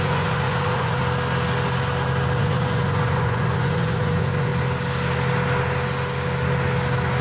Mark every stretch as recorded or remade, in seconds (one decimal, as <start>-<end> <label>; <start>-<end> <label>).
0.0-1.0 remade; 1.0-2.4 recorded; 2.4-4.5 remade; 4.5-7.2 recorded